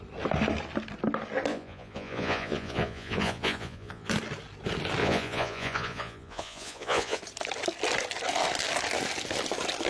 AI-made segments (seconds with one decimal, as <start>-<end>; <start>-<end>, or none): 1.5-4.1; 5.0-7.2